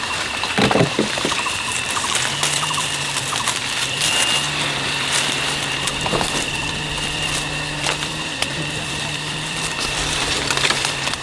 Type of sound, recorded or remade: remade